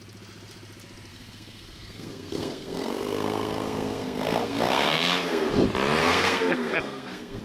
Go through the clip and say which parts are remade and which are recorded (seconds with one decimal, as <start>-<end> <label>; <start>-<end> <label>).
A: 0.0-1.1 recorded; 1.1-5.5 remade; 5.5-6.0 recorded; 6.0-7.4 remade